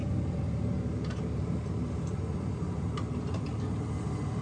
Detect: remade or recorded recorded